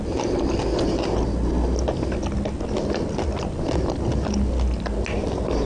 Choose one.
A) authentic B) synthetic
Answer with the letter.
A